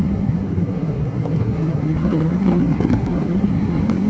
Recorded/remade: remade